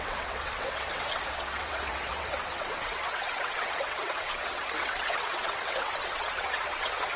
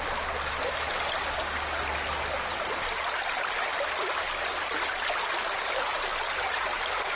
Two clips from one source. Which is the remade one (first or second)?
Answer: first